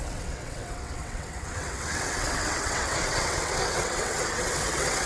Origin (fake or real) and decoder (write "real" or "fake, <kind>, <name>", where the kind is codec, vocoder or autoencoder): fake, vocoder, WaveNeXt